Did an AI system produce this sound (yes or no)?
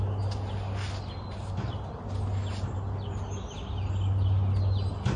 no